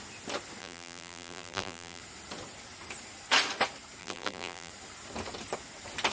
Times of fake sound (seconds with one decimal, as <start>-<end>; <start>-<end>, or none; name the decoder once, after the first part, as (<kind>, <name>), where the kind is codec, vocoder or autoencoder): 0.6-2.0 (vocoder, BigVGAN v2); 4.0-4.7

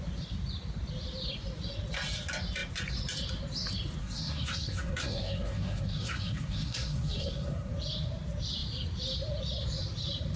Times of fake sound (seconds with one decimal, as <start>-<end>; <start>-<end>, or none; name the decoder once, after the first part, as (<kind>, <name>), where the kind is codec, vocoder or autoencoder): 4.0-7.7 (codec, SNAC)

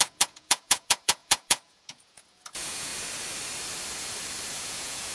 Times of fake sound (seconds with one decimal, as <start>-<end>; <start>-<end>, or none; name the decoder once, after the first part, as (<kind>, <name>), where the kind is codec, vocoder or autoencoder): 0.0-2.9 (vocoder, Vocos); 4.5-5.1

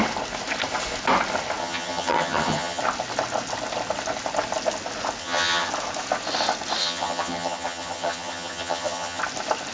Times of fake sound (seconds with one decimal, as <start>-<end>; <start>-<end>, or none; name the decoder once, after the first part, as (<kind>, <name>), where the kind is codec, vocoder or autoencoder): 1.6-2.8 (vocoder, HiFi-GAN); 5.2-5.7; 6.8-9.2

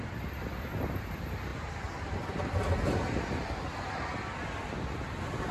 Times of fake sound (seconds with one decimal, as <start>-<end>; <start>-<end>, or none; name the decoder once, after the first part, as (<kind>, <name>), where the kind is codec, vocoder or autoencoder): none